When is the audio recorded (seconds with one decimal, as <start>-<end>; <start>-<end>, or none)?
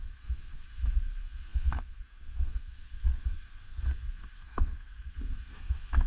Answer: none